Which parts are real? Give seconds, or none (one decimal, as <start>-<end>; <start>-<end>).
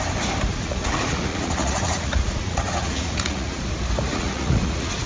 0.0-0.5; 3.6-4.1